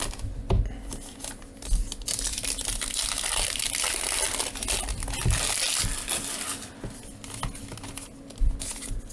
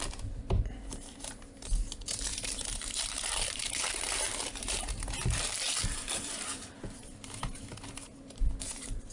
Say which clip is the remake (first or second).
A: second